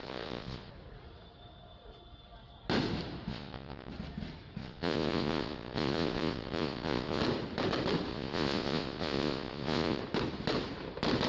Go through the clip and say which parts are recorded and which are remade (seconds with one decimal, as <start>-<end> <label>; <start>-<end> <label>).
0.0-0.7 remade; 0.7-3.3 recorded; 3.3-3.9 remade; 3.9-4.6 recorded; 4.6-7.2 remade; 7.2-8.1 recorded; 8.1-10.0 remade; 10.0-11.3 recorded